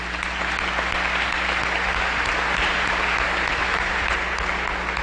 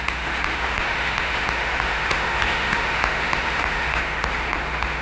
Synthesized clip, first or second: second